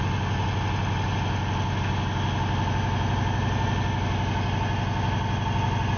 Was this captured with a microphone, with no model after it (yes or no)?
yes